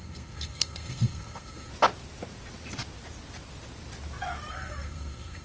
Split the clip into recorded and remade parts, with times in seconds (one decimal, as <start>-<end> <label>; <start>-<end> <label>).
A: 0.0-1.7 remade; 1.7-4.5 recorded; 4.5-5.4 remade